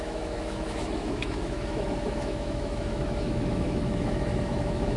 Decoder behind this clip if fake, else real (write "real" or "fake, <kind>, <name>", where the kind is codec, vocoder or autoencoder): fake, autoencoder, DAC-VAE